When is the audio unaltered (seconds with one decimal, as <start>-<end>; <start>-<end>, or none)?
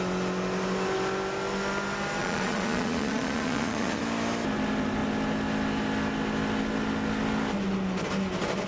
0.0-2.2; 4.0-8.7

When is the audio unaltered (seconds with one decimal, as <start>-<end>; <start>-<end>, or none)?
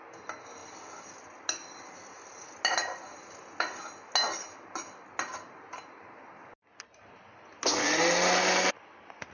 0.0-9.3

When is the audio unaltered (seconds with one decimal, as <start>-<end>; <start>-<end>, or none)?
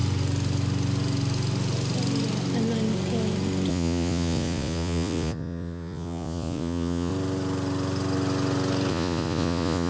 0.0-3.7; 7.1-8.9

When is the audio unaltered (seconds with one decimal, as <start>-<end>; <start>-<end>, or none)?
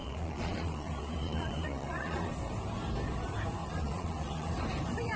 2.3-3.6; 4.5-5.2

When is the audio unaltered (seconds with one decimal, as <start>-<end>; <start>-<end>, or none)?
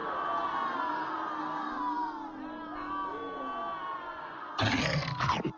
0.0-3.9; 4.5-5.6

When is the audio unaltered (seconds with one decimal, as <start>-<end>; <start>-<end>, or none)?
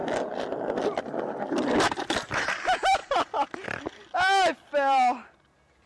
0.0-5.9